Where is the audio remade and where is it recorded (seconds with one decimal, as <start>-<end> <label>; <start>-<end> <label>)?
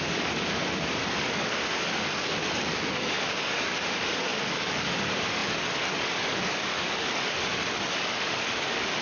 0.0-9.0 remade